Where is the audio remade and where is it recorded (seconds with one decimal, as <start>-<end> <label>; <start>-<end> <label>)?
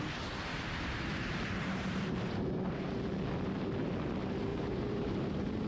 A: 0.0-0.5 recorded; 0.5-3.0 remade; 3.0-4.5 recorded; 4.5-5.7 remade